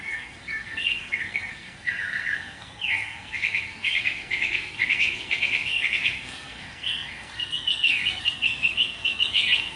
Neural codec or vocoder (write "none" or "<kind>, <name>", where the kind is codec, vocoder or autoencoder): codec, SNAC